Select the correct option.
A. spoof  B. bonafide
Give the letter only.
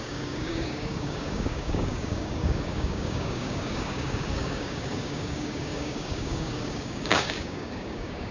A